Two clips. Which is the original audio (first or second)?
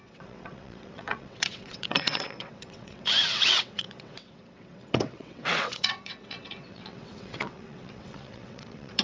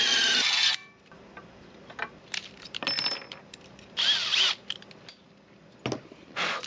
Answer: second